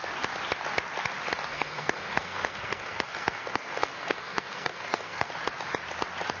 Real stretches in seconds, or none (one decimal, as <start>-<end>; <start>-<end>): 0.0-1.5; 5.3-6.4